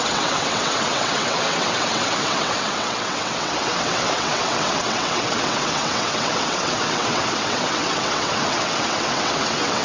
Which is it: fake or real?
fake